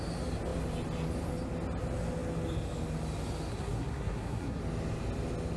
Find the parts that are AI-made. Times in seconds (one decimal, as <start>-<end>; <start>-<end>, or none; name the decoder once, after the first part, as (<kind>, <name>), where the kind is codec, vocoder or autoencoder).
3.5-4.6 (codec, SNAC)

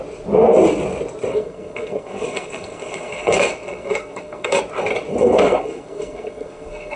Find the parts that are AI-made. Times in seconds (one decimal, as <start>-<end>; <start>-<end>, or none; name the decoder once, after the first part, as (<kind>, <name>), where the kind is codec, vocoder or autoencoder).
1.3-4.6 (codec, SNAC); 5.1-7.0